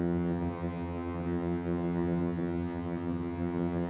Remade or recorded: remade